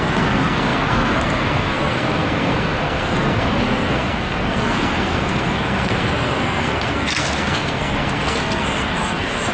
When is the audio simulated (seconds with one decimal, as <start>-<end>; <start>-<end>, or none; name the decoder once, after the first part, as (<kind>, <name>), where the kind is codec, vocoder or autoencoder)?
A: 0.0-9.5 (codec, SNAC)